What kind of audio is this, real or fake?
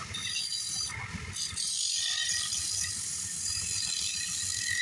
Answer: real